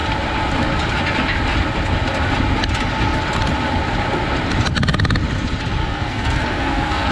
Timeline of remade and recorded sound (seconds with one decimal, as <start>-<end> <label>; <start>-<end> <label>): 0.0-5.8 recorded; 5.8-7.1 remade